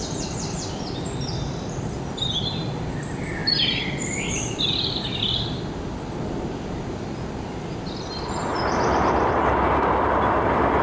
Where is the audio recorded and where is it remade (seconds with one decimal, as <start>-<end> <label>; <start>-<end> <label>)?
0.0-3.0 remade; 3.0-3.4 recorded; 3.4-5.4 remade; 5.4-8.5 recorded; 8.5-9.6 remade; 9.6-10.8 recorded